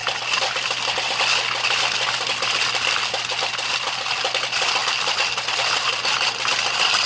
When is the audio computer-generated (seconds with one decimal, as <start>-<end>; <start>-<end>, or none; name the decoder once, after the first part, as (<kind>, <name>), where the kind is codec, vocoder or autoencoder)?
none